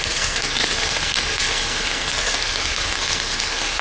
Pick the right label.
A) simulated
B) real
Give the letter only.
A